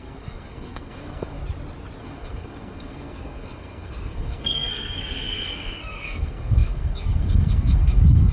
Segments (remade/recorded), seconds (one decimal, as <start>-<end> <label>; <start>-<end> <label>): 0.0-1.4 remade; 1.4-2.0 recorded; 2.0-8.3 remade